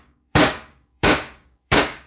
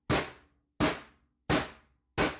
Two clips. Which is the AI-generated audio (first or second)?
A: first